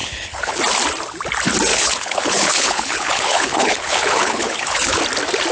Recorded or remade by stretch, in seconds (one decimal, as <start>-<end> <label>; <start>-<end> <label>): 0.0-0.6 remade; 0.6-1.7 recorded; 1.7-5.0 remade; 5.0-5.5 recorded